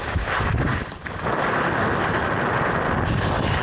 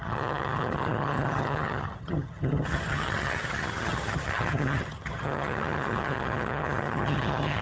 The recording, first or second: first